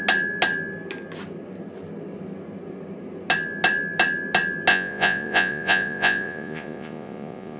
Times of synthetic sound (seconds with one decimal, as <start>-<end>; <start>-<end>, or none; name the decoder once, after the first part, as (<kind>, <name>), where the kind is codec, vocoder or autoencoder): 4.7-7.6 (vocoder, Vocos)